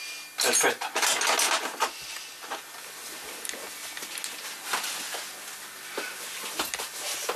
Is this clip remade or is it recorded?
recorded